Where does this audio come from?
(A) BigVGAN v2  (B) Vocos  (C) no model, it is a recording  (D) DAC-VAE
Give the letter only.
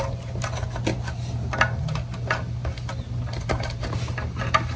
C